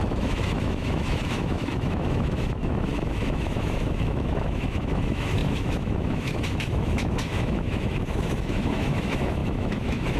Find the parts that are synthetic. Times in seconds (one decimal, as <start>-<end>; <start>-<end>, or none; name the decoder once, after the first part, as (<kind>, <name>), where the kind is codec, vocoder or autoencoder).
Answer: 0.0-10.2 (autoencoder, DAC-VAE)